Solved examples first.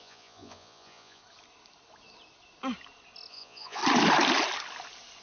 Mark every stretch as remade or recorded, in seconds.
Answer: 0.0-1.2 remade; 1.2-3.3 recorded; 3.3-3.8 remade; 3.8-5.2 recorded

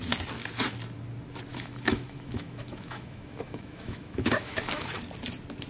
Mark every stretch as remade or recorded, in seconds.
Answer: 0.0-1.5 recorded; 1.5-4.9 remade; 4.9-5.7 recorded